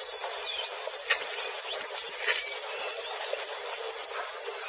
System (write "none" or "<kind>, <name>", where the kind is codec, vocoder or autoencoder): vocoder, BigVGAN v2